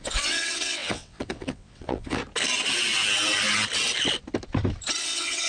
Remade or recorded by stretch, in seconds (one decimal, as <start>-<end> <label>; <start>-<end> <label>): 0.0-2.2 remade; 2.2-5.0 recorded; 5.0-5.5 remade